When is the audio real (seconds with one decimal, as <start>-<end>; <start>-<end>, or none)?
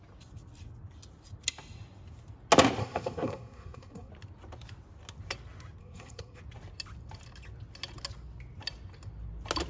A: 0.0-2.8; 4.1-5.8; 6.4-9.7